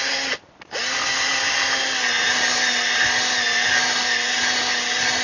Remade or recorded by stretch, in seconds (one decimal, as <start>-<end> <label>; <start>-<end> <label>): 0.0-5.2 recorded